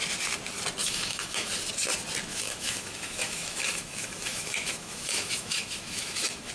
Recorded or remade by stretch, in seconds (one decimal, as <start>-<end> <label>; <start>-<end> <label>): 0.0-0.8 recorded; 0.8-1.5 remade; 1.5-2.3 recorded; 2.3-6.5 remade